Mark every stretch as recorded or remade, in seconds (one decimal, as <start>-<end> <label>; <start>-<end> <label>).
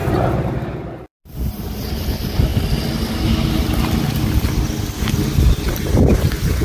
0.0-2.5 remade; 2.5-5.6 recorded; 5.6-6.6 remade